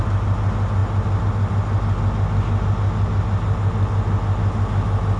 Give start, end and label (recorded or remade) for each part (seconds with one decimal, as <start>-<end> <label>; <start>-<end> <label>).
0.0-5.2 recorded